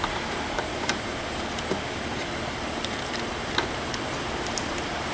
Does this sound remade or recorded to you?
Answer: remade